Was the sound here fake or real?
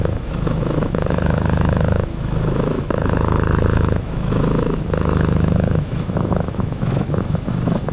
fake